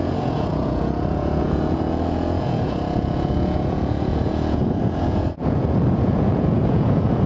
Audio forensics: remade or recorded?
remade